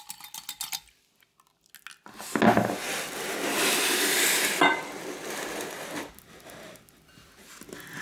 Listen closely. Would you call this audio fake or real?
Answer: real